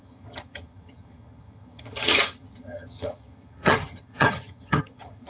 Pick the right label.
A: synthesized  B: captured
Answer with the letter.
A